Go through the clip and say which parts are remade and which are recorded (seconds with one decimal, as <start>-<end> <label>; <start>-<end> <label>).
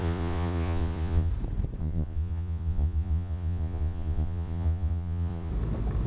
0.0-1.3 remade; 1.3-1.8 recorded; 1.8-5.5 remade; 5.5-6.1 recorded